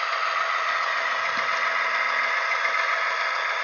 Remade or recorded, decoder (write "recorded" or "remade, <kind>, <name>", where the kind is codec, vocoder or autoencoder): recorded